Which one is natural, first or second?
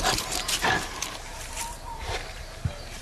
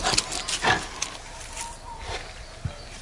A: second